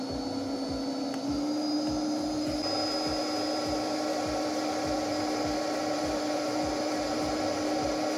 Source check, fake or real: real